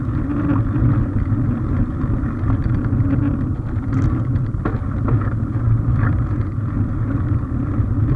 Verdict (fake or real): real